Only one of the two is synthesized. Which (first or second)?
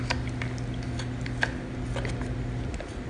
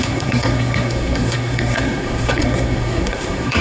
second